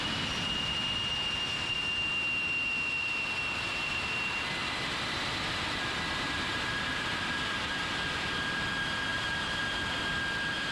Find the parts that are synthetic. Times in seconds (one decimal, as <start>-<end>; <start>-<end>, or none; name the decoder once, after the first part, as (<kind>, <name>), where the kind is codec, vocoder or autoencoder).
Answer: 9.1-9.6 (vocoder, BigVGAN v2)